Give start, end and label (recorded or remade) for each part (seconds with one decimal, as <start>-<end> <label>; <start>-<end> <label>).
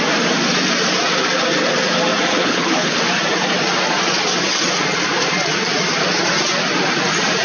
0.0-2.3 recorded; 2.3-3.0 remade; 3.0-7.4 recorded